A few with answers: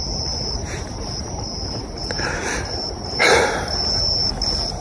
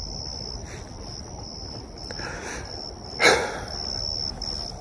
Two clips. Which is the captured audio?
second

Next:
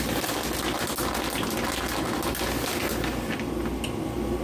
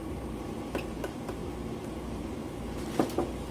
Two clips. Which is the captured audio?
first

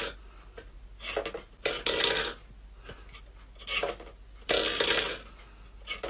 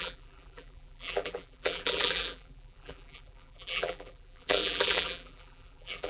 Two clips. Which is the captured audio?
first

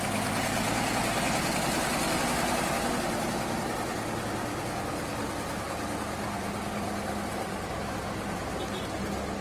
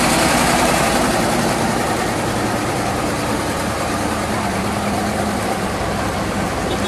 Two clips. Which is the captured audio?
first